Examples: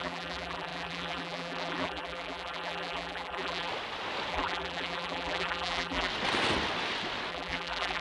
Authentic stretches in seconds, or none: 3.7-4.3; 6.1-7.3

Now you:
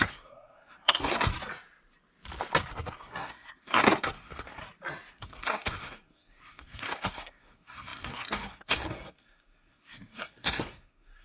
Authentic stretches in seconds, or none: 1.3-2.7; 4.6-5.1

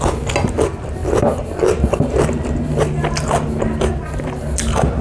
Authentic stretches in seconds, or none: 0.0-5.0

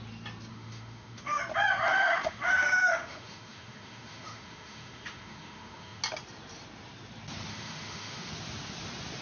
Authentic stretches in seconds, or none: 0.0-0.5; 1.4-1.9; 6.0-7.5; 8.3-9.2

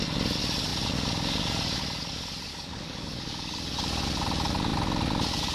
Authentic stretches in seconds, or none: 0.0-2.5; 3.6-5.5

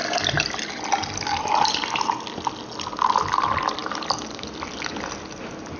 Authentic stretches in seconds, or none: 0.0-5.8

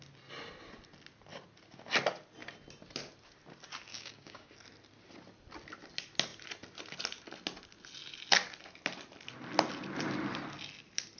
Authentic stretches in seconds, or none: 0.0-3.9; 4.5-11.2